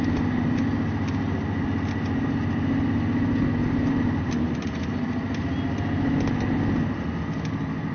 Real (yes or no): yes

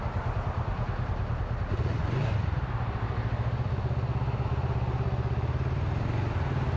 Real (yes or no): yes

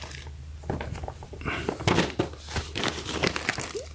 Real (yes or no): yes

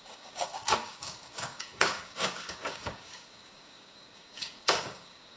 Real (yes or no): no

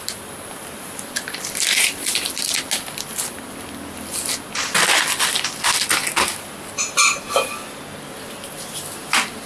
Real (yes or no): yes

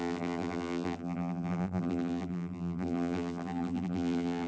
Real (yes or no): no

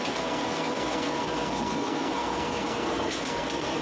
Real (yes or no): no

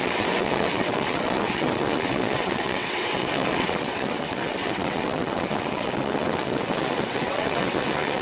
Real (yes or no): no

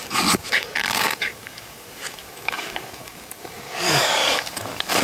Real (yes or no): no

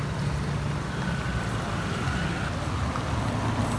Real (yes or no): yes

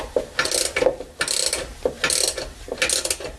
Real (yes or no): yes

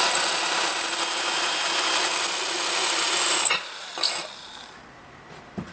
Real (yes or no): no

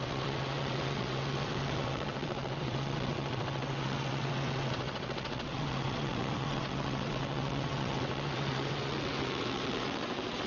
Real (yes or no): no